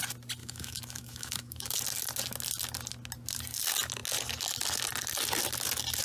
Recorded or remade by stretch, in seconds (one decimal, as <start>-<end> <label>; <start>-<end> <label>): 0.0-0.4 recorded; 0.4-1.8 remade; 1.8-6.0 recorded